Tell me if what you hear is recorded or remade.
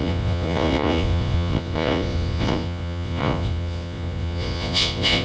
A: remade